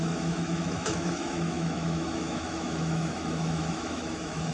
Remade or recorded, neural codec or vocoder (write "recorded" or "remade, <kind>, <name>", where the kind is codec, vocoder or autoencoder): remade, autoencoder, DAC-VAE